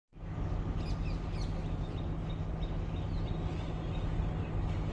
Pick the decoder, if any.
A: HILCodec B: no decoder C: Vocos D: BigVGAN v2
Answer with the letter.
B